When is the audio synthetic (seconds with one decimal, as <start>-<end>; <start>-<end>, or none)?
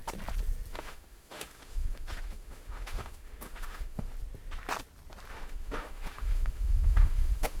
0.7-4.1; 5.3-7.6